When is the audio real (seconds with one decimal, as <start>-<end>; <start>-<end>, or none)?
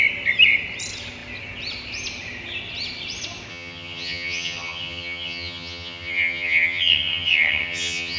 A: 0.0-3.5